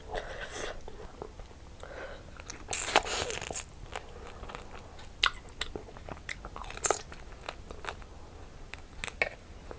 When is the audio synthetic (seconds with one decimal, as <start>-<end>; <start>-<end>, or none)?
none

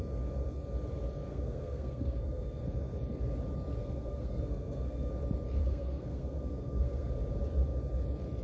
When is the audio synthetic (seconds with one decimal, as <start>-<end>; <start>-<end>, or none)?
1.3-2.6; 3.8-5.1; 5.6-7.1

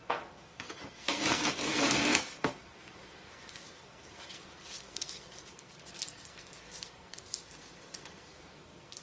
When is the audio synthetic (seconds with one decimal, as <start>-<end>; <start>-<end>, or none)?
0.0-9.0

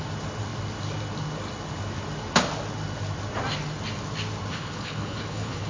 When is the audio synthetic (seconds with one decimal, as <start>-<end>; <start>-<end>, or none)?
4.5-5.7